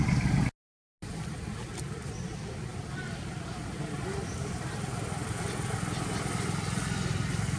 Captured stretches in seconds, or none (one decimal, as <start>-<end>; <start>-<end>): 0.0-7.6